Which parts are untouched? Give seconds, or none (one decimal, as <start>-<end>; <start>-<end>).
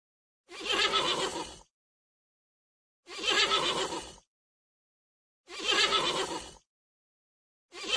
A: 0.0-8.0